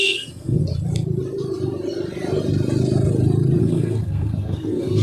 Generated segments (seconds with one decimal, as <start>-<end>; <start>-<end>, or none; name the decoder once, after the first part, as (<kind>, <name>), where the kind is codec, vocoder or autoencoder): 0.0-0.6 (codec, SNAC); 3.6-5.0